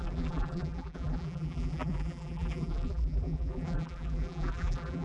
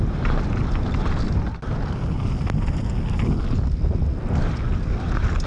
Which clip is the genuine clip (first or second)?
second